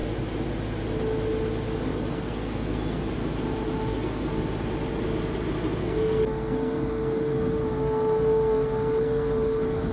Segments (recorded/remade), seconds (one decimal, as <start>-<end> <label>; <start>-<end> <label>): 0.0-1.9 recorded; 1.9-3.0 remade; 3.0-3.9 recorded; 3.9-4.4 remade; 4.4-5.8 recorded; 5.8-9.9 remade